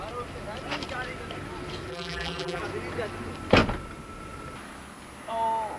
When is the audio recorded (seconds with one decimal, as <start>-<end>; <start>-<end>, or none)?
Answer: 0.0-1.9; 2.6-5.8